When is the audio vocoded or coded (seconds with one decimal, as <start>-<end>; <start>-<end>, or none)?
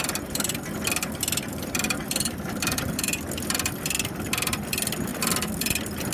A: 5.1-5.6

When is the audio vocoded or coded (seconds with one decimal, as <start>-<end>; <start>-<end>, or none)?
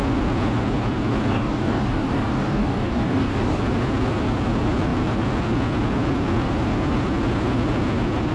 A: 1.3-3.6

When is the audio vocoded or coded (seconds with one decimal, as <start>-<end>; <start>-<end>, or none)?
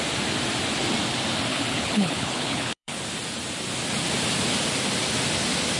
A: 1.5-3.0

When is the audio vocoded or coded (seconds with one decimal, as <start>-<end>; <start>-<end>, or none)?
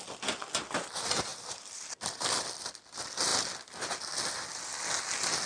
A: 1.3-2.2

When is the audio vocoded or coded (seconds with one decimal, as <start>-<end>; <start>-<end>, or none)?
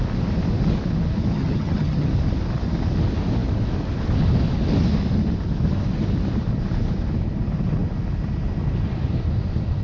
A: 1.3-2.1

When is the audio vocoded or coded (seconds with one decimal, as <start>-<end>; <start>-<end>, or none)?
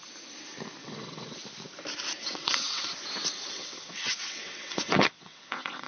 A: 0.8-1.4; 2.2-2.9; 3.5-5.9